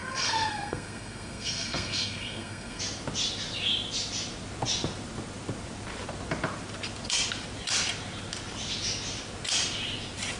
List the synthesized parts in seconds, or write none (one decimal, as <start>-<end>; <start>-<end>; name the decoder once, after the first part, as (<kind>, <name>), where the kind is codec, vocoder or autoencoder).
0.0-2.8 (codec, SNAC)